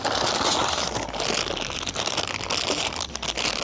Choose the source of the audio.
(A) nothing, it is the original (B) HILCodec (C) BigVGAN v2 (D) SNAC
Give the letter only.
A